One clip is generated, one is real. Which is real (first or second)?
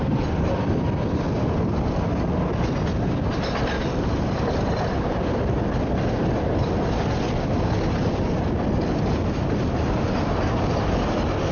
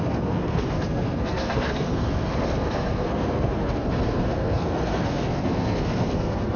first